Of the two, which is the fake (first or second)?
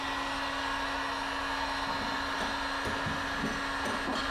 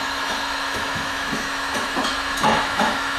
second